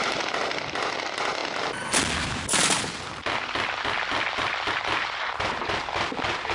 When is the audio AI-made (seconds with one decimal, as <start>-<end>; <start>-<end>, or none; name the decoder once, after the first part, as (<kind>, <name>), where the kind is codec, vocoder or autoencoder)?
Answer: none